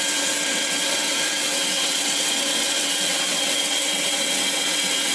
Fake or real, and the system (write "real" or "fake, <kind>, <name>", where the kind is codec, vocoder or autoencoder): fake, vocoder, WaveNeXt